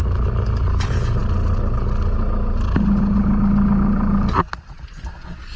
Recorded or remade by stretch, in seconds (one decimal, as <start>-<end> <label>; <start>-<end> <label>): 0.0-5.6 recorded